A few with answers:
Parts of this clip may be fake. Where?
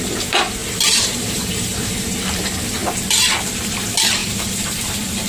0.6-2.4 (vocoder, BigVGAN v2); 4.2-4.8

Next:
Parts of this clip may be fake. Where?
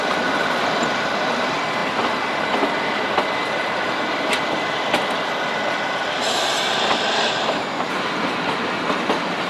none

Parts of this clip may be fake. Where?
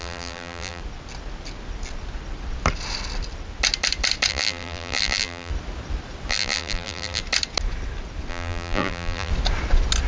0.0-0.8 (vocoder, BigVGAN v2); 4.3-5.5; 6.3-7.2; 8.3-9.3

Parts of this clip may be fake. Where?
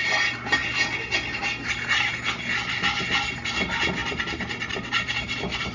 4.0-5.1 (vocoder, BigVGAN v2)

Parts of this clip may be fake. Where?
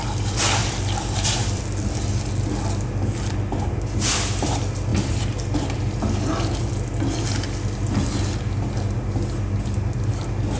0.6-1.6 (vocoder, BigVGAN v2)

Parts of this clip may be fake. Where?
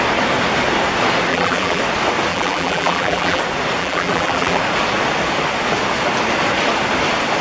1.3-1.8 (vocoder, BigVGAN v2); 2.3-3.4; 3.8-4.6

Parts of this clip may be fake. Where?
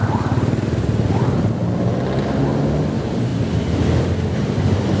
none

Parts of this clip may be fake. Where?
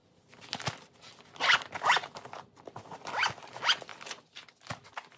none